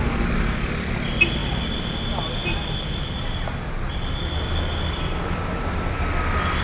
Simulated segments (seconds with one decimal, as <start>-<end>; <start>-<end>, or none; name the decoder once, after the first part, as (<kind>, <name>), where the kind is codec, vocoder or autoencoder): none